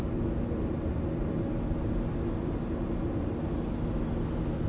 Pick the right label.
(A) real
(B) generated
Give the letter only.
A